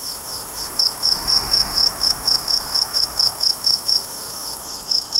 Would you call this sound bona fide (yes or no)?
no